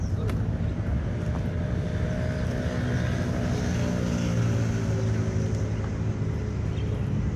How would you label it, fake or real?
real